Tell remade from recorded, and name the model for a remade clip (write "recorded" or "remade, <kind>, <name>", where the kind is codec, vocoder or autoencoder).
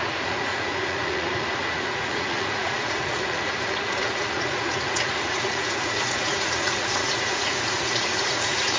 remade, vocoder, Vocos